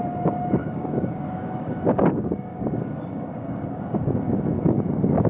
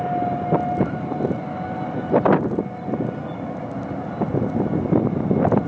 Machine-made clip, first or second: first